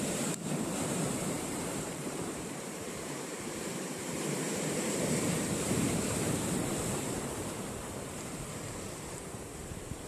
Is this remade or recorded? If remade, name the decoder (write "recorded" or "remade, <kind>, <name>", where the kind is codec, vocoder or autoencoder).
remade, vocoder, BigVGAN v2